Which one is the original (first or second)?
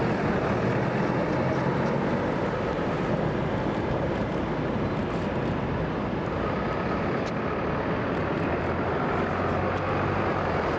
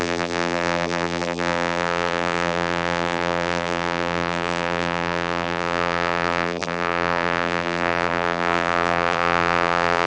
first